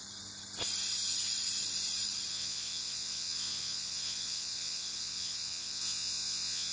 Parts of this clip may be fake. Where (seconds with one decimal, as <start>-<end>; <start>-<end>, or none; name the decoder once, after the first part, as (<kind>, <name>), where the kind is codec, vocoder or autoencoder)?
2.3-6.7 (vocoder, Vocos)